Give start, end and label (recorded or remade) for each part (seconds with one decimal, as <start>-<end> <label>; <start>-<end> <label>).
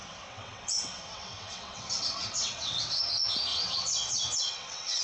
0.0-3.0 remade; 3.0-3.5 recorded; 3.5-5.0 remade